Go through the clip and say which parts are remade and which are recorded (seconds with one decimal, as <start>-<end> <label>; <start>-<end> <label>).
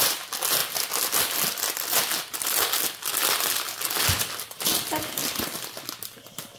0.0-6.6 recorded